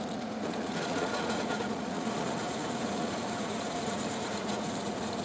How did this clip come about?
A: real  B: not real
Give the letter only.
B